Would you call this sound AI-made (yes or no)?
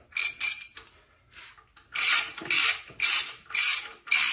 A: no